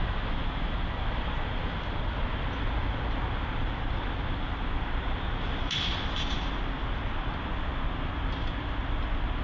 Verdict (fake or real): real